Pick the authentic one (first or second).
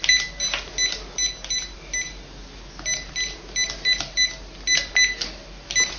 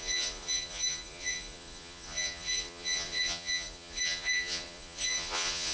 first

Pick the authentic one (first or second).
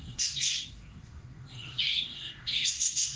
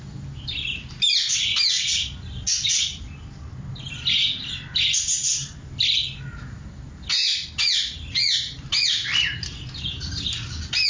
second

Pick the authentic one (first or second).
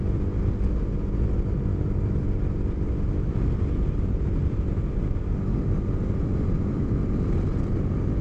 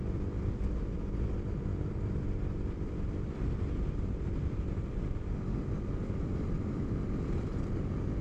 first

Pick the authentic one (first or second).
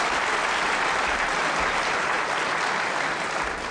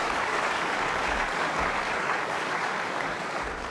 first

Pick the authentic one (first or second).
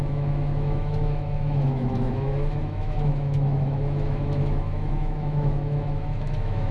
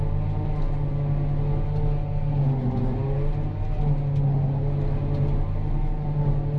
second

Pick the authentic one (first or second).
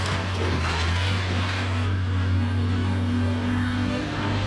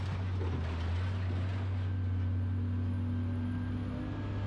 second